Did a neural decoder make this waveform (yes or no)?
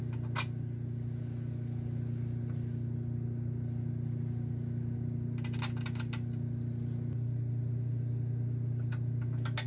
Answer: no